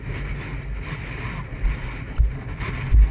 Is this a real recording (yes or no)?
yes